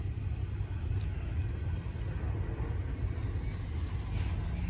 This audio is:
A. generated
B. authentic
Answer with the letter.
B